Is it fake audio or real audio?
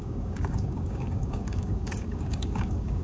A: fake